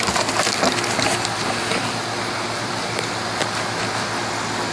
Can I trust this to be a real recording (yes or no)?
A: yes